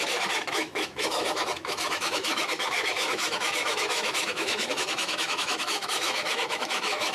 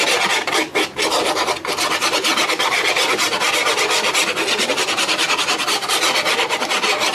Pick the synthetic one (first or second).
first